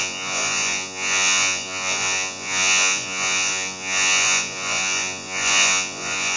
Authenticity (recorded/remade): remade